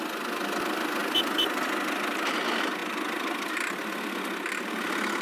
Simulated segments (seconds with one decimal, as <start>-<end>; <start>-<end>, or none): none